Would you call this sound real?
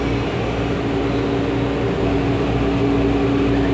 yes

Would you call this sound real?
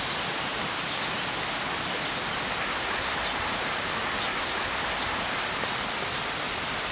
yes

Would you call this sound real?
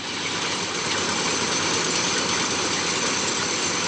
yes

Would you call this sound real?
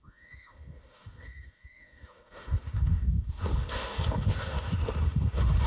no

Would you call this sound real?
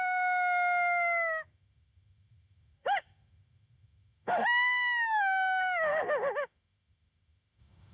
no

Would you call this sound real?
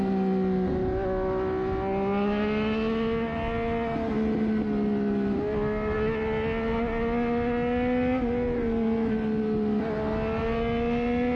yes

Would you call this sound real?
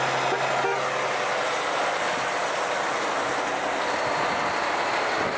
yes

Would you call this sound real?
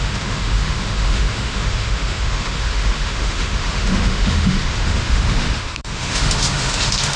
no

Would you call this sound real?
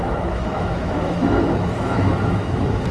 no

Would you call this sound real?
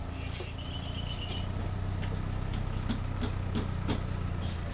yes